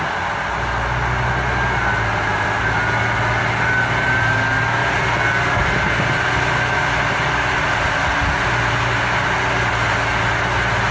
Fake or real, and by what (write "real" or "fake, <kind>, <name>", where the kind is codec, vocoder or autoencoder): real